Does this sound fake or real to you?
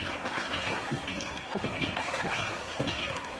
fake